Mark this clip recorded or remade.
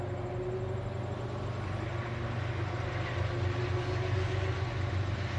recorded